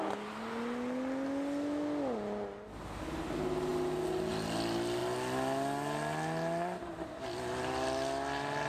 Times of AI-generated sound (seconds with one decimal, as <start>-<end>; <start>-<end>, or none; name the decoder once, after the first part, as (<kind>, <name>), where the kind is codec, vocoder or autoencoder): none